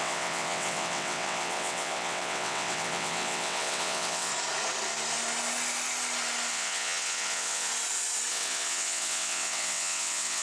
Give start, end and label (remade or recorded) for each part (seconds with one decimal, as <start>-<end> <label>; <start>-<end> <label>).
0.0-4.3 remade; 4.3-6.5 recorded; 6.5-7.7 remade; 7.7-8.3 recorded; 8.3-10.4 remade